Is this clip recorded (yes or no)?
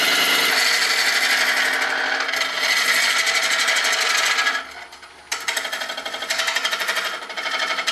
yes